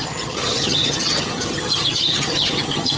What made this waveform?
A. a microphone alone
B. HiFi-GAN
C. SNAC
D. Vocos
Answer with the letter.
B